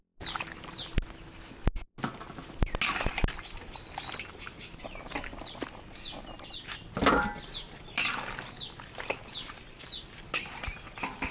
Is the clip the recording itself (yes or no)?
yes